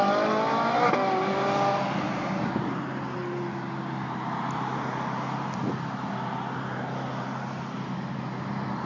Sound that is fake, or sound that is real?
real